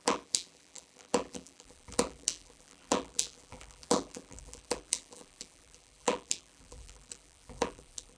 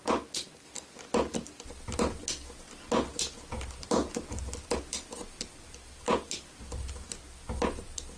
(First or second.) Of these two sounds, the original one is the second